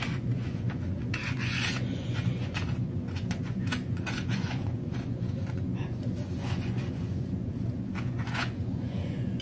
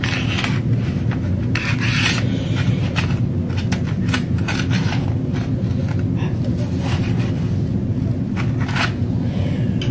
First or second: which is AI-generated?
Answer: first